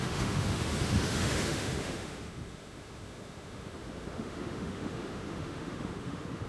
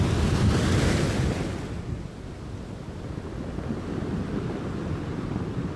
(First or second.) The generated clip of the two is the first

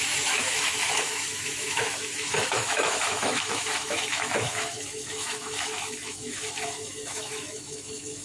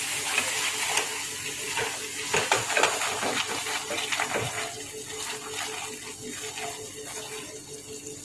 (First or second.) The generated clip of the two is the first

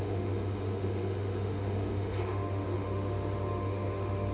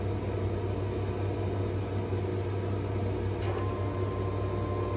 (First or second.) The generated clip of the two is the first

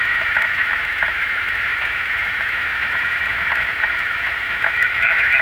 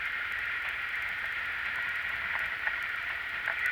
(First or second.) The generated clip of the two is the first